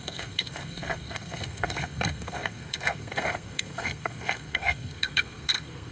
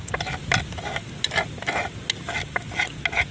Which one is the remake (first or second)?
first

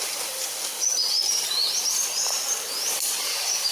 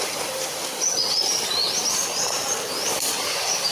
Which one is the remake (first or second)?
second